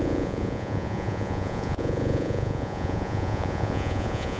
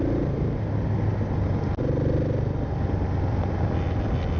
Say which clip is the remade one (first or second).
first